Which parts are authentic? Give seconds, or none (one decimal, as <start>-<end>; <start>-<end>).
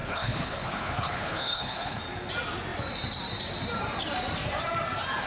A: 2.0-5.3